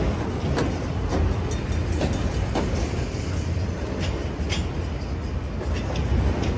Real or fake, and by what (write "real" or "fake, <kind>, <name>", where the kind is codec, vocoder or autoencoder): real